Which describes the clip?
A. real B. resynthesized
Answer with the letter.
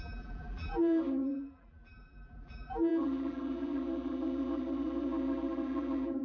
B